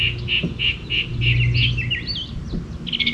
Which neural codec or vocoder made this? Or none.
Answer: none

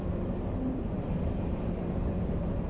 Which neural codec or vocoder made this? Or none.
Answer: vocoder, BigVGAN v2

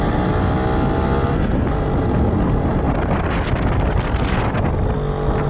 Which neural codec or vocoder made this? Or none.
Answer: none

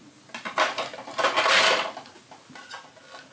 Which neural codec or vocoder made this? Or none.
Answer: none